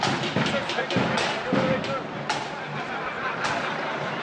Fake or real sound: real